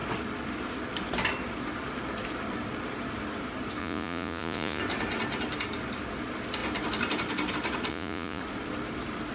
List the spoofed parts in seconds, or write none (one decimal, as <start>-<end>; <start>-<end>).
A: 3.8-4.8; 7.9-8.4